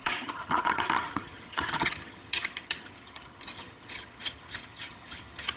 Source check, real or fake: fake